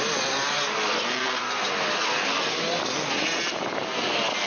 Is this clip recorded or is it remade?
recorded